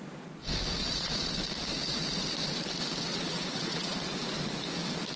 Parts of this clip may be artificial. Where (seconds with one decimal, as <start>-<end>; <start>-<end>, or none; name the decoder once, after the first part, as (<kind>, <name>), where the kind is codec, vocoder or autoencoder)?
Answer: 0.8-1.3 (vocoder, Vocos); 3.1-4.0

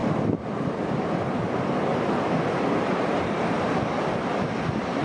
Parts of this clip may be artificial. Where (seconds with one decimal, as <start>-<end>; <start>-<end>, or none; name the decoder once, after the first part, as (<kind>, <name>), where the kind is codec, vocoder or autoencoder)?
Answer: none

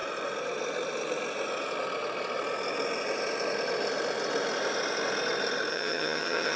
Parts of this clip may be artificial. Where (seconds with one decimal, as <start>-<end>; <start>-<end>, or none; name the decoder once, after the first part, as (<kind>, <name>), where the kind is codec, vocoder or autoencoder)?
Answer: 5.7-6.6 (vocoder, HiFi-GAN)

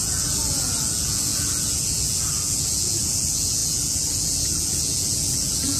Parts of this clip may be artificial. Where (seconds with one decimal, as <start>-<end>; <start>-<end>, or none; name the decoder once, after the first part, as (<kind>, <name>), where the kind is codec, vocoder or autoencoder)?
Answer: 0.0-5.8 (vocoder, Vocos)

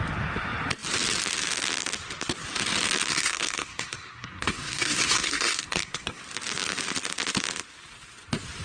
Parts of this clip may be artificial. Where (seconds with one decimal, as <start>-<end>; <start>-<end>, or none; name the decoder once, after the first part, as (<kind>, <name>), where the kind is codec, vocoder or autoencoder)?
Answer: 3.1-6.2 (codec, SNAC)

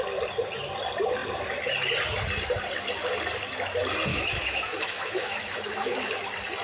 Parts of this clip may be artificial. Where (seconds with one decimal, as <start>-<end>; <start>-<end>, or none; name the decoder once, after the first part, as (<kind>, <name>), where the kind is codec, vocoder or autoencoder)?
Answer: 4.1-6.1 (autoencoder, DAC-VAE)